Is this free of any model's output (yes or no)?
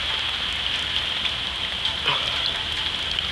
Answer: yes